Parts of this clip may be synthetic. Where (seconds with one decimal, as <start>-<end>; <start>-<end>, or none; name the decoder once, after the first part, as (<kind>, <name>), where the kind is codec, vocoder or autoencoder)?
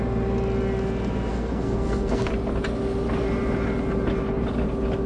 1.3-2.3 (codec, SNAC)